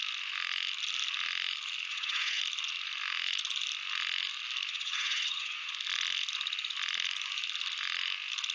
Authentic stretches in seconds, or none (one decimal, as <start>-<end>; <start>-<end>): 0.0-1.9; 2.4-4.7; 5.7-8.5